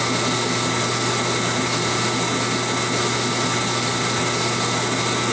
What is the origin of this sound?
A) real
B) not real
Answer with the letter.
A